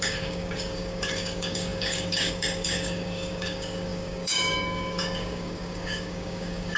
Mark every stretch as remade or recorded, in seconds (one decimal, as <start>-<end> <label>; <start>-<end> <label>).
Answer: 0.0-6.8 remade